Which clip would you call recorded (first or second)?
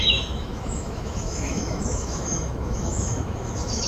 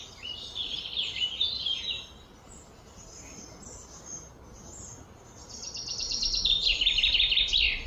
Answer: second